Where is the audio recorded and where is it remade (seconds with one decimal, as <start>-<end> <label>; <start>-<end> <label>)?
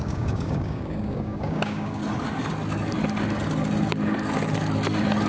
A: 0.0-2.0 remade; 2.0-5.3 recorded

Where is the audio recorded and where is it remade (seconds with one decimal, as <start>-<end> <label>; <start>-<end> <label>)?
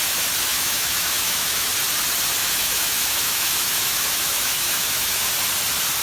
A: 0.0-0.5 recorded; 0.5-1.7 remade; 1.7-2.4 recorded; 2.4-5.3 remade; 5.3-6.0 recorded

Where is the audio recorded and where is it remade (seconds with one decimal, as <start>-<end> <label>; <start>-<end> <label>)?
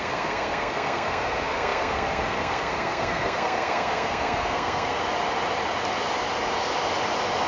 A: 0.0-5.0 remade; 5.0-7.5 recorded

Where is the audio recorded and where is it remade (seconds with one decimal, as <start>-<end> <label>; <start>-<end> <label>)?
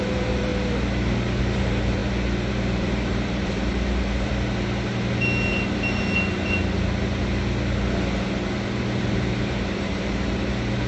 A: 0.0-0.5 remade; 0.5-1.4 recorded; 1.4-2.0 remade; 2.0-2.5 recorded; 2.5-4.3 remade; 4.3-9.0 recorded; 9.0-10.9 remade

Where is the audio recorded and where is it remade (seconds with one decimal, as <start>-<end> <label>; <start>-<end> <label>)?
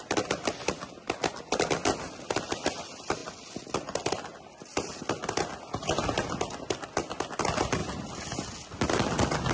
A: 0.0-9.5 recorded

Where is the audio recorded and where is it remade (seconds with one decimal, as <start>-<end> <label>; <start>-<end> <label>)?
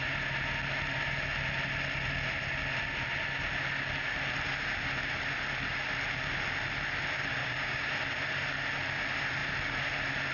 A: 0.0-7.4 recorded; 7.4-7.9 remade; 7.9-10.3 recorded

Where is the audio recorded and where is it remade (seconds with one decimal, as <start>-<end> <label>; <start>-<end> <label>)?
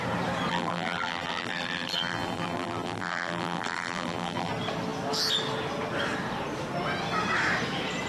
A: 0.0-0.5 recorded; 0.5-4.5 remade; 4.5-8.1 recorded